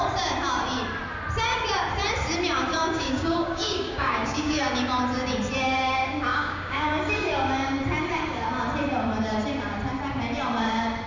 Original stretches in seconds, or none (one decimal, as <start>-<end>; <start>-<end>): 0.0-2.7; 4.6-6.3; 7.3-11.1